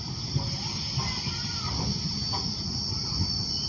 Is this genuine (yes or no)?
yes